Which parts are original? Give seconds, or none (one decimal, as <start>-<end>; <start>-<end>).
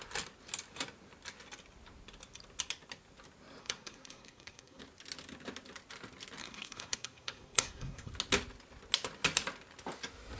0.0-3.6; 4.8-6.4; 8.1-10.4